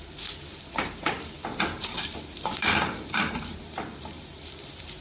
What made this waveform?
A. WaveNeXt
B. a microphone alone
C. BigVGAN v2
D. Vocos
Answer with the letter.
C